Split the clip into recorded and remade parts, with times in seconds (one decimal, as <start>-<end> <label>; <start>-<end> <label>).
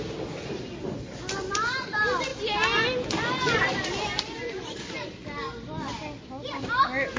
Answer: 0.0-7.2 recorded